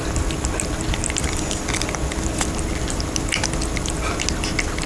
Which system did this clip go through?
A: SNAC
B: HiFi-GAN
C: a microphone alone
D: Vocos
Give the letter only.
C